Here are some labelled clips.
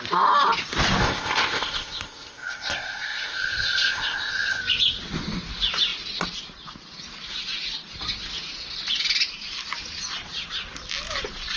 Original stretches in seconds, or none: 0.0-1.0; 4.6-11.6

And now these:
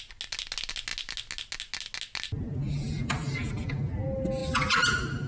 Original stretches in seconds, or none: 0.0-5.3

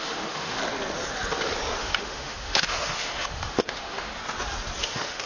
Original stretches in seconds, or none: 0.6-1.8; 4.1-4.8

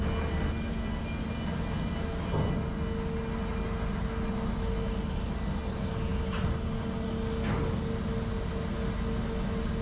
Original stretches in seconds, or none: 0.0-9.8

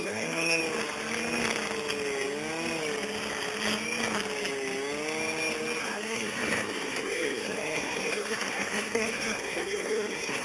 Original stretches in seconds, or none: 0.6-5.8